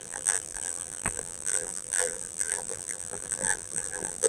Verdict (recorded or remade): remade